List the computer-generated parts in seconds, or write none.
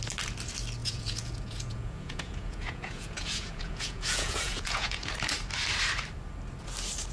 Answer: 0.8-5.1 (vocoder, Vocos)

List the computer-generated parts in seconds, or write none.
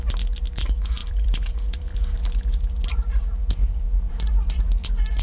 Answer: 1.0-2.2 (vocoder, BigVGAN v2)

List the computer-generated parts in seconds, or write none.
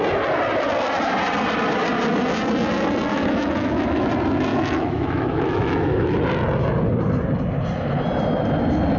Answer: 3.1-4.1 (autoencoder, DAC-VAE); 4.5-6.2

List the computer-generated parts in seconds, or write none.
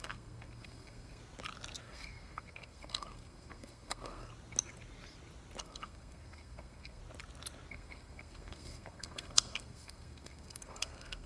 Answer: 0.0-1.2 (codec, SNAC); 1.8-4.3; 5.6-7.0; 7.7-11.3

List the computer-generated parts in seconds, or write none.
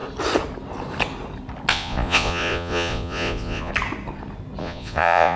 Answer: 1.7-3.7 (vocoder, Vocos); 4.6-5.4